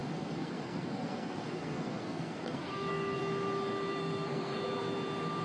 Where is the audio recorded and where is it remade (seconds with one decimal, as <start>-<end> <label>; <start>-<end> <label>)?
0.0-3.2 remade; 3.2-4.0 recorded; 4.0-4.6 remade; 4.6-5.4 recorded